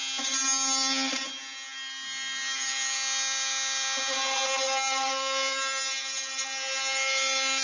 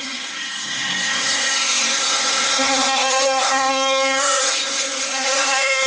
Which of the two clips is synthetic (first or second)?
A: second